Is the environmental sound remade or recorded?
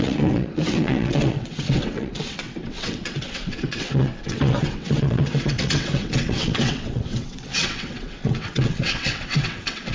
remade